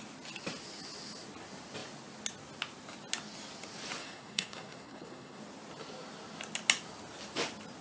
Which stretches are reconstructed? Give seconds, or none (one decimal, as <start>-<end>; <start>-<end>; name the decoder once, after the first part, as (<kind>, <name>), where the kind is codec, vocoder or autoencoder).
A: 4.0-5.4 (codec, SNAC)